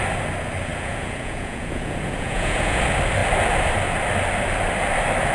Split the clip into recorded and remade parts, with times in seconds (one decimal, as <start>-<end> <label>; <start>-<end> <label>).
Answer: 0.0-0.7 recorded; 0.7-2.8 remade; 2.8-5.3 recorded